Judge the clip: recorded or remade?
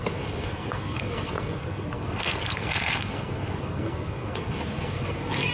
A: remade